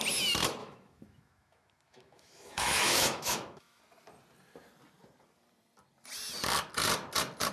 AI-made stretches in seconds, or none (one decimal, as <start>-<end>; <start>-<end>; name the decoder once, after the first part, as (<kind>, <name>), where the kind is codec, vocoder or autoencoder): 0.6-3.8 (autoencoder, DAC-VAE)